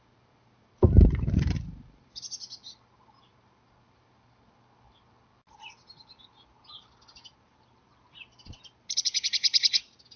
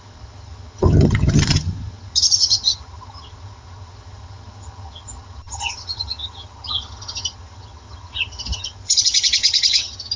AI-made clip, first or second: second